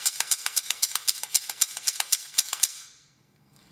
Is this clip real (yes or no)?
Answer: no